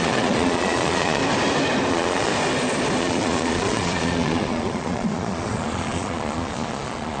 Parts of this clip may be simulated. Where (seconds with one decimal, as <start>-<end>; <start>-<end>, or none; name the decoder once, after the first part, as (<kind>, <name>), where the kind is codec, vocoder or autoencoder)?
0.0-1.2 (vocoder, Vocos); 1.9-2.3; 3.0-7.2